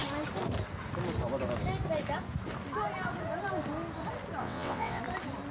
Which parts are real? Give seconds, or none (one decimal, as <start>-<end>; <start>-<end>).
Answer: 0.0-4.4; 5.0-5.5